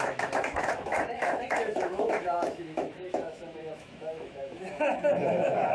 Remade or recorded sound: remade